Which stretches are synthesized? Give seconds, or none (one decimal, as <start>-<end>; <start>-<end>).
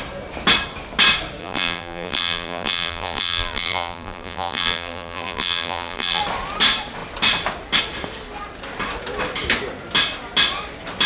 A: 1.4-6.2